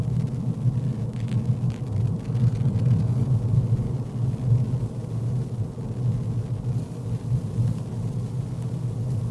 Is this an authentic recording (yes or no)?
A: yes